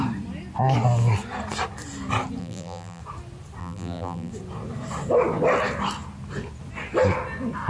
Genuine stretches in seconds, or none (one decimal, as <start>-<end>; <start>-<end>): 0.0-2.4; 3.0-3.6; 4.3-7.7